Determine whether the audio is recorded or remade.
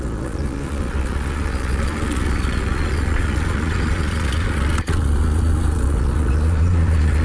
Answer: remade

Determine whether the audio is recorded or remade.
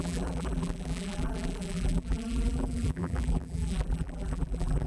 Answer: remade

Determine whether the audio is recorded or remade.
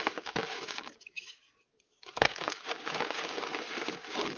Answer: remade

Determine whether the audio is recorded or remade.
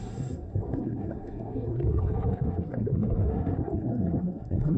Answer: remade